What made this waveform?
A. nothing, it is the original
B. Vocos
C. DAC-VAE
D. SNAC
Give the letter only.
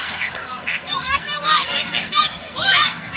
D